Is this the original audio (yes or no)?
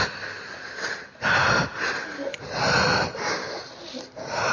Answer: yes